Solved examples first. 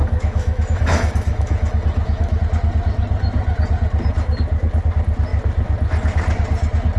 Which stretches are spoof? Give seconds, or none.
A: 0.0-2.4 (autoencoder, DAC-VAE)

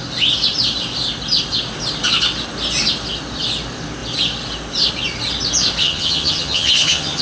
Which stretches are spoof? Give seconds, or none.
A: 5.8-7.2 (vocoder, HiFi-GAN)

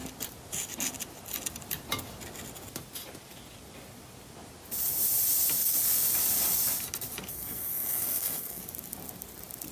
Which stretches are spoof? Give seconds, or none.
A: 7.3-8.6 (codec, SNAC)

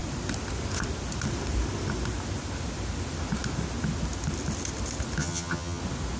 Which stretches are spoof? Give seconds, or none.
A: 5.2-5.8 (vocoder, HiFi-GAN)